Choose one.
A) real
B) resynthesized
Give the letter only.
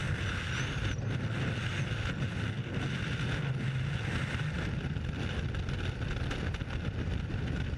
A